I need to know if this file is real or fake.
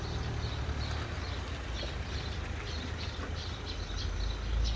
real